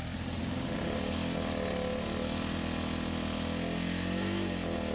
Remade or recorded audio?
recorded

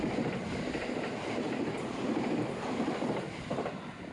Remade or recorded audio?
recorded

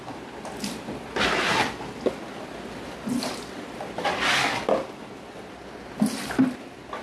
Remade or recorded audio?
recorded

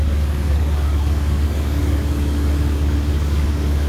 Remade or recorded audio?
remade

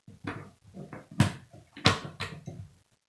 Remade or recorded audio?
recorded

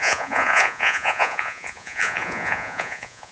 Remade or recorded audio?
remade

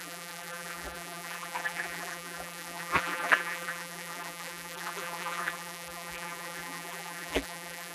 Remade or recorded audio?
remade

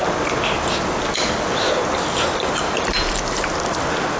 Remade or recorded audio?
recorded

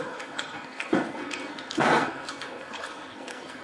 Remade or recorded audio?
remade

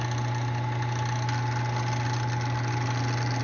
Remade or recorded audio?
recorded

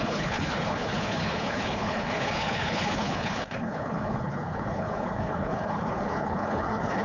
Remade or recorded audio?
remade